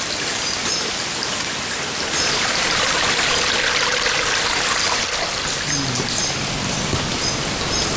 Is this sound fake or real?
real